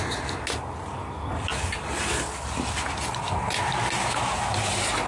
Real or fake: real